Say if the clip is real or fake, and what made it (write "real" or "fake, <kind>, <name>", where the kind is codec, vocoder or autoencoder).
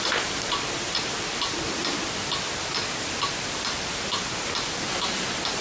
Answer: real